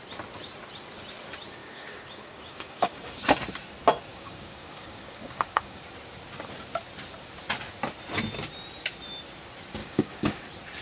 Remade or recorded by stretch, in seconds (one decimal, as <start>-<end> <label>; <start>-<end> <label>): 0.0-1.6 recorded; 1.6-3.1 remade; 3.1-4.1 recorded; 4.1-5.8 remade; 5.8-9.8 recorded; 9.8-10.4 remade; 10.4-10.8 recorded